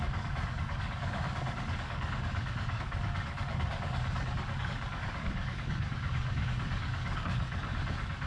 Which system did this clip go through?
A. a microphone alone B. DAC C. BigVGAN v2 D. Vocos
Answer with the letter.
B